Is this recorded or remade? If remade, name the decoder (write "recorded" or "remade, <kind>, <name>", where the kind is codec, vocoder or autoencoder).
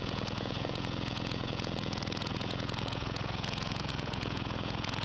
remade, vocoder, Vocos